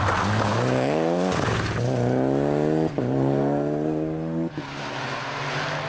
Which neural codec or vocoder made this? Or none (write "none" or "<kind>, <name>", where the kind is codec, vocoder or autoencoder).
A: none